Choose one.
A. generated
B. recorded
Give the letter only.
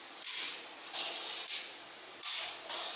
B